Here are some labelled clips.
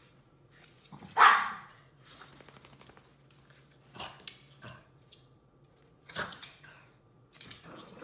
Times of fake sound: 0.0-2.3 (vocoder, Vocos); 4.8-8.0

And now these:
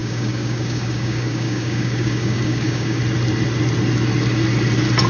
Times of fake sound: 0.0-3.0 (codec, DAC)

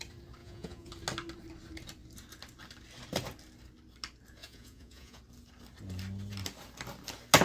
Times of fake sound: 0.4-0.9 (vocoder, Vocos); 4.4-5.2

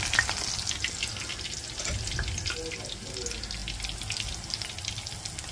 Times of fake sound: none